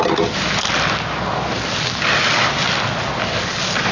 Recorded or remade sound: recorded